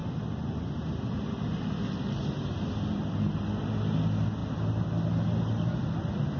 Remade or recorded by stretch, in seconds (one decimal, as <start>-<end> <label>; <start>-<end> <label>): 0.0-6.4 recorded